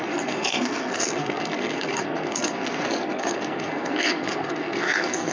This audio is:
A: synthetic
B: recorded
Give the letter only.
A